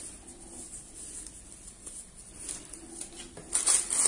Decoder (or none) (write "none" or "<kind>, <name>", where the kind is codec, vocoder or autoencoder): none